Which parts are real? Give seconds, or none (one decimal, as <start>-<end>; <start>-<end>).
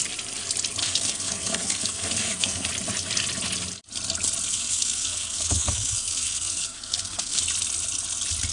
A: 0.0-0.8; 2.7-4.5; 7.4-8.5